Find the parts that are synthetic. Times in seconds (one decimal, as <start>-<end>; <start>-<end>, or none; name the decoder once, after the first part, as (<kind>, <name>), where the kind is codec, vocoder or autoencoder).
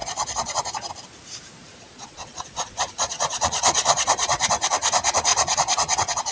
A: 0.0-0.9 (vocoder, Vocos); 1.6-4.5; 5.3-6.3